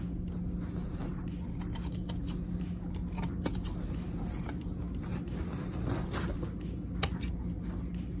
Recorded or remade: recorded